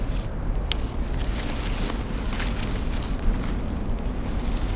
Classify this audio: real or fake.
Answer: real